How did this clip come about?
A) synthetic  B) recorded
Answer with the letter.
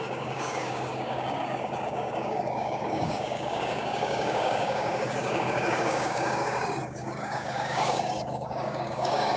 A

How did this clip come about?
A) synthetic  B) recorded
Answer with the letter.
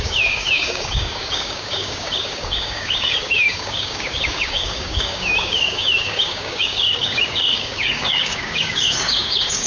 A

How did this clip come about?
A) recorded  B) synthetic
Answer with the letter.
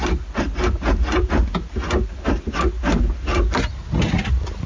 A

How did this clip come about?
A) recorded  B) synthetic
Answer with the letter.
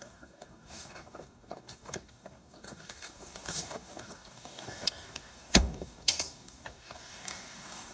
B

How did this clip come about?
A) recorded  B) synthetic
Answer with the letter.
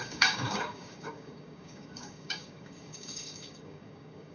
B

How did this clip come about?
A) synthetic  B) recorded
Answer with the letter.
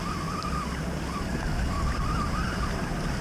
B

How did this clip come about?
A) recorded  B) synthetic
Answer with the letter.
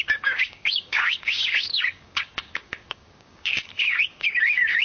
B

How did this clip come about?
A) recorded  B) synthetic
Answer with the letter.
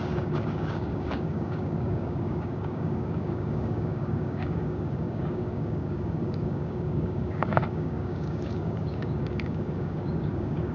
B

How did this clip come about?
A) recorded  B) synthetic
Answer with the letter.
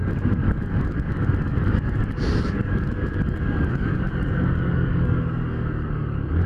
B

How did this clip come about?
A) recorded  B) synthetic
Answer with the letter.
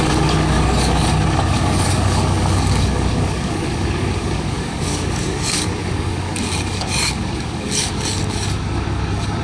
B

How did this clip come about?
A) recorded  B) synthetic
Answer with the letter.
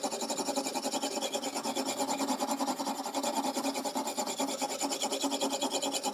A